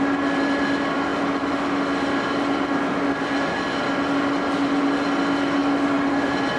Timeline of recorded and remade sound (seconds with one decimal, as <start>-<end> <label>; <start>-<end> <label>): 0.0-6.6 recorded